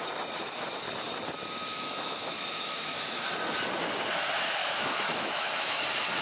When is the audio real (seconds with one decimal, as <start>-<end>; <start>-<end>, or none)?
0.0-1.7; 3.3-4.6; 5.8-6.2